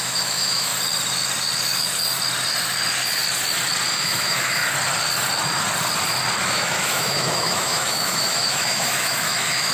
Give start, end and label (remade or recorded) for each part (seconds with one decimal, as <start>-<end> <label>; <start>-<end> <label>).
0.0-0.7 remade; 0.7-3.9 recorded; 3.9-4.6 remade; 4.6-6.4 recorded; 6.4-9.7 remade